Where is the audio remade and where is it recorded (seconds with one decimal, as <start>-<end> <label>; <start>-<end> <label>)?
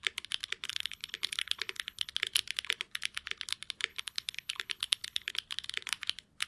0.0-0.7 recorded; 0.7-2.1 remade; 2.1-3.9 recorded; 3.9-5.3 remade; 5.3-6.5 recorded